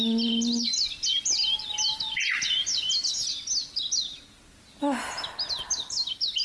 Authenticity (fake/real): real